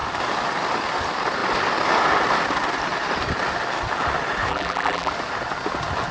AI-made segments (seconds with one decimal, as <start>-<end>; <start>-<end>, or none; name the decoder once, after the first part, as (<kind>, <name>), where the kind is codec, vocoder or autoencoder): 4.5-5.1 (vocoder, BigVGAN v2)